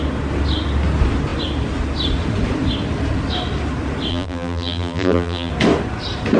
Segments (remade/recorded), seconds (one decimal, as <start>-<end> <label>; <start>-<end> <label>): 0.0-4.1 recorded; 4.1-5.5 remade; 5.5-6.4 recorded